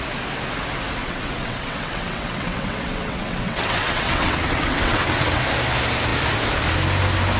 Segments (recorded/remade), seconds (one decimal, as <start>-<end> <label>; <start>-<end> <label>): 0.0-1.0 recorded; 1.0-5.4 remade; 5.4-7.4 recorded